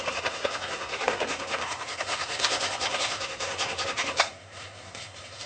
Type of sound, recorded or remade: remade